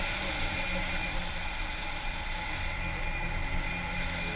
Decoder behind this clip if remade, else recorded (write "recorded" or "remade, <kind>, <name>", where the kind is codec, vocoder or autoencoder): recorded